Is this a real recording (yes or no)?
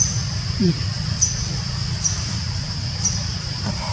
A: no